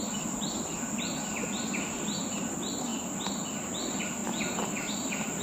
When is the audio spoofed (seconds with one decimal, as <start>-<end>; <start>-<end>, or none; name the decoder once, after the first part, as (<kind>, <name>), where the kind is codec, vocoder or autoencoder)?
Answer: none